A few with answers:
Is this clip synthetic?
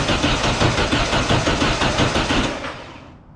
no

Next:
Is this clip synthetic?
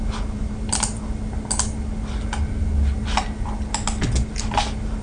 no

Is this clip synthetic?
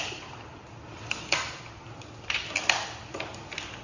no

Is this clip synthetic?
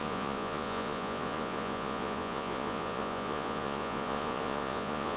yes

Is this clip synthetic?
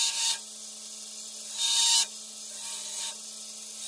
no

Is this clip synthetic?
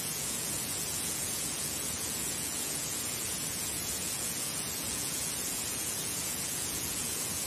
yes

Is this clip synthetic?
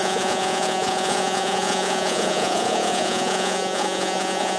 yes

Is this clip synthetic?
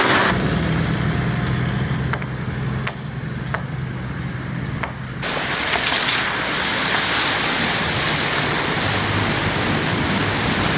no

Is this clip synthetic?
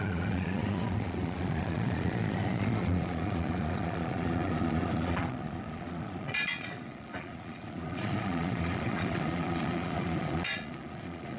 yes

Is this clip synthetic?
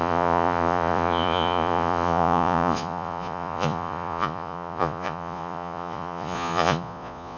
yes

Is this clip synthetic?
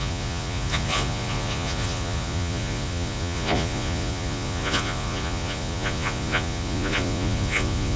yes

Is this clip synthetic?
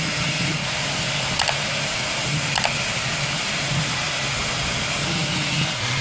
no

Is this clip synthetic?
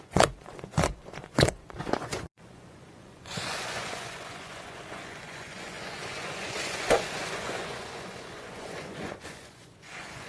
yes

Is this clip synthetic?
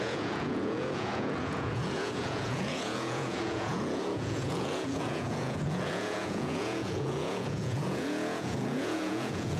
yes